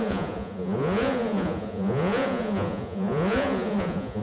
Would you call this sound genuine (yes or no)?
no